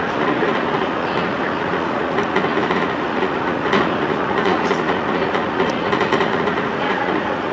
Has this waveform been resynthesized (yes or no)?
yes